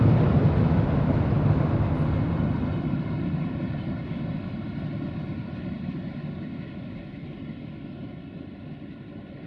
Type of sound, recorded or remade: recorded